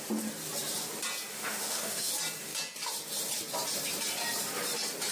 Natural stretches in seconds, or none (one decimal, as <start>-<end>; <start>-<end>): 0.0-1.3; 2.1-5.1